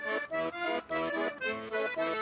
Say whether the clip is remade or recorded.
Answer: recorded